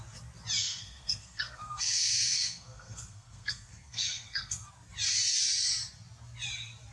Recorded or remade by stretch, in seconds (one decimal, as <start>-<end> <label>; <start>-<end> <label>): 0.0-0.6 recorded; 0.6-4.7 remade; 4.7-6.9 recorded